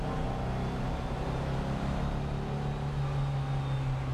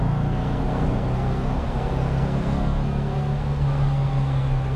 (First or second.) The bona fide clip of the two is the first